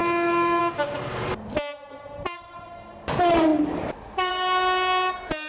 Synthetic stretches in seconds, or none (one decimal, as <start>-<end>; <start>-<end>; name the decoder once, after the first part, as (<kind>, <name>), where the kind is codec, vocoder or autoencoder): 0.0-0.6 (autoencoder, DAC-VAE)